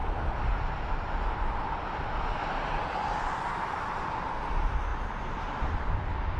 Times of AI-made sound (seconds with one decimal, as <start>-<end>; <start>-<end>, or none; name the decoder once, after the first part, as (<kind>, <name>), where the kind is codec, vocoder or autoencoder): none